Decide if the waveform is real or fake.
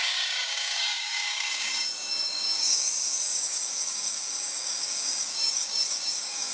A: fake